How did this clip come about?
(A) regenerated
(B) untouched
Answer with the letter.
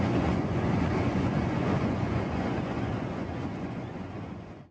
A